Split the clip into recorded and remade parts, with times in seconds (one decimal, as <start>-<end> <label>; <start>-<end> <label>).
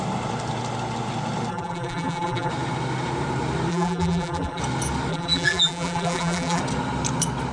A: 0.0-1.5 recorded; 1.5-2.5 remade; 2.5-3.7 recorded; 3.7-4.6 remade; 4.6-5.1 recorded; 5.1-6.6 remade; 6.6-7.5 recorded